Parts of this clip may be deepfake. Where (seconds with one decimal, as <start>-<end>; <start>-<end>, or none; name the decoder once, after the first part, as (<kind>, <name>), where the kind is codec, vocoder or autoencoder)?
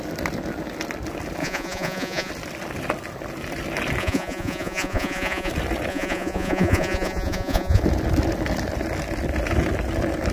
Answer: 1.4-2.3 (vocoder, Vocos); 4.0-5.5; 5.9-7.8